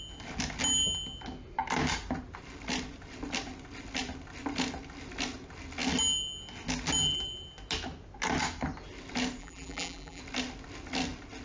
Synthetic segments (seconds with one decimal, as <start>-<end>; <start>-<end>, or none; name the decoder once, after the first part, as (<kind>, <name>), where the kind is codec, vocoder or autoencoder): 9.4-10.2 (vocoder, BigVGAN v2)